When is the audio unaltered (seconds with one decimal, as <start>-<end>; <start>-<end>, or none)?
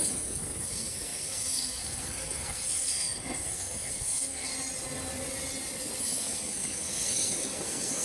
4.5-6.0